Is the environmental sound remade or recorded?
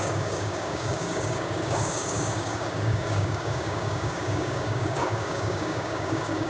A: remade